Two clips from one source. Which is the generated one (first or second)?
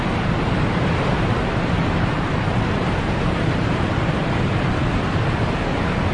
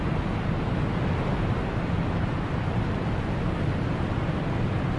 first